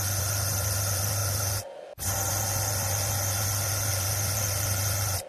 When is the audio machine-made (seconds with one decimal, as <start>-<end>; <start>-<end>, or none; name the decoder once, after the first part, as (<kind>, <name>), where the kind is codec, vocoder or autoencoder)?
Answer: none